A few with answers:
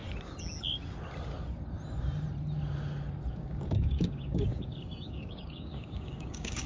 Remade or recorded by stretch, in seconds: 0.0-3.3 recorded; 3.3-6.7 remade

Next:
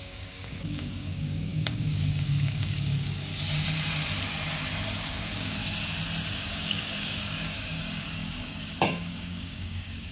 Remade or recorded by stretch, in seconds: 0.0-3.3 remade; 3.3-5.1 recorded; 5.1-5.6 remade; 5.6-6.3 recorded; 6.3-10.1 remade